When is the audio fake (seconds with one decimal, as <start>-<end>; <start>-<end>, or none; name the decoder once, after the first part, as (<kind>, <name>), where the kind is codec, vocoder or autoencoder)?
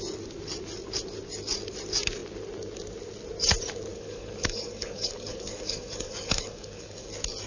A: 3.9-7.1 (codec, DAC)